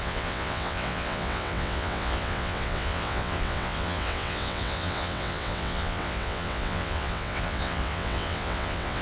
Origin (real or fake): fake